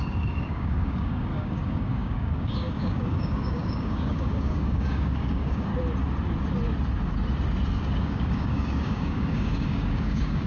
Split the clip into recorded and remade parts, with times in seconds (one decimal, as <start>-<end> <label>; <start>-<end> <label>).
0.0-5.7 remade; 5.7-7.8 recorded; 7.8-10.5 remade